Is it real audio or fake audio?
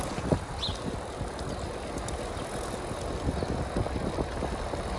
real